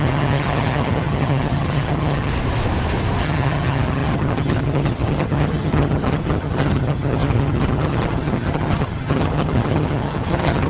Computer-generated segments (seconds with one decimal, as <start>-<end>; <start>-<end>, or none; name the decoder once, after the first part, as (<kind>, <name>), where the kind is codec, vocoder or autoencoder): 0.0-2.3 (vocoder, HiFi-GAN); 3.2-10.7